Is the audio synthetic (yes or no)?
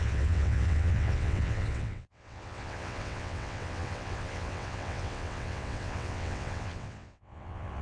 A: yes